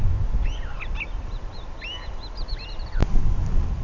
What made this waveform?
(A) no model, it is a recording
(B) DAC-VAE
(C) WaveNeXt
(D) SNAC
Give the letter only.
A